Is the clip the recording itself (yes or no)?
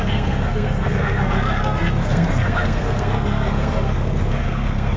no